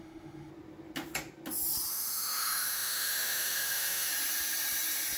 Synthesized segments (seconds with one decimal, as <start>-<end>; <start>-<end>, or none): 0.0-0.5; 1.9-4.1